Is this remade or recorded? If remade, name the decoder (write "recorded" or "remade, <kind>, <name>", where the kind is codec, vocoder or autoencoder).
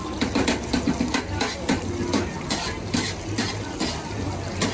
recorded